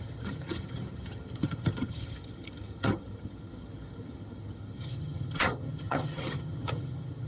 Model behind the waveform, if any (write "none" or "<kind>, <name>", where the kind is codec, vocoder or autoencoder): vocoder, HiFi-GAN